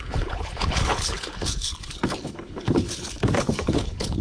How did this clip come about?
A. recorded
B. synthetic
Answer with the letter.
B